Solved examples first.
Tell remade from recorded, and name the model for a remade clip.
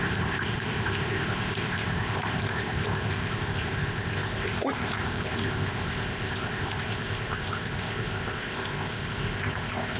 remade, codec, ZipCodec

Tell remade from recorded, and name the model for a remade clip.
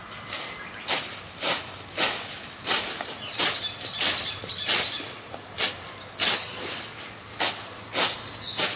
recorded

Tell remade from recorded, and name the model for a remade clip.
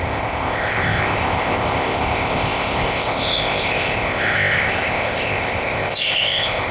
remade, codec, ZipCodec